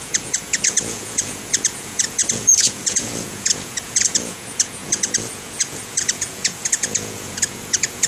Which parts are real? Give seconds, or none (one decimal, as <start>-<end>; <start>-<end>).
none